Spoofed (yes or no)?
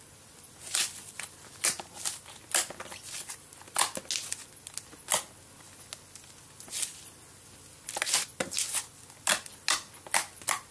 no